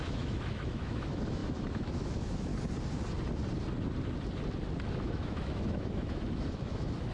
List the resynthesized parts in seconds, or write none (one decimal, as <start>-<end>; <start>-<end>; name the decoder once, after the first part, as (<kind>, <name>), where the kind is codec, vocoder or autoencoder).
0.0-2.5 (autoencoder, DAC-VAE); 4.9-7.1